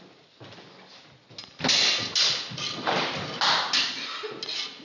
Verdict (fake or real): real